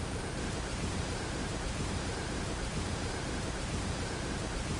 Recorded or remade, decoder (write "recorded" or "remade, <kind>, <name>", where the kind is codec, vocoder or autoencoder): remade, vocoder, BigVGAN v2